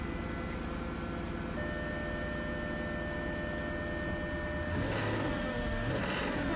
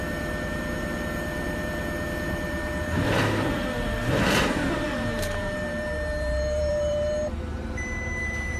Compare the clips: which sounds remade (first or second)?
second